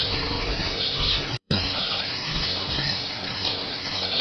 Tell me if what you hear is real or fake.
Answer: fake